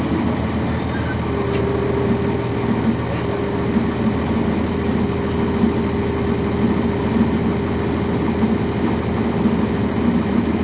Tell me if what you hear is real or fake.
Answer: real